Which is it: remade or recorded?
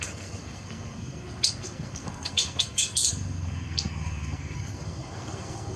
remade